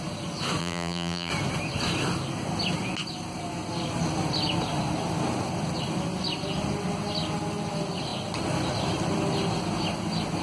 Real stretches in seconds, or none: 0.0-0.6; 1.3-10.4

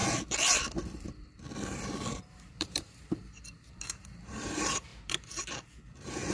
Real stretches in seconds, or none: 0.0-2.2

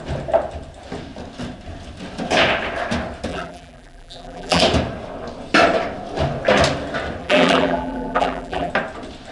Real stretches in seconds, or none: 0.0-3.3; 4.6-7.2; 8.7-9.3

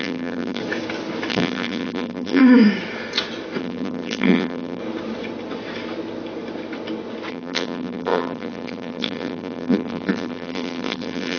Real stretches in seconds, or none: 0.6-1.3; 2.4-3.6; 4.8-7.3